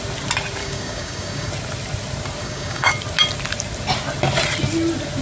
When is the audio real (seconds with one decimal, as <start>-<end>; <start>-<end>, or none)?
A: 0.0-0.6; 1.5-2.4; 2.9-5.2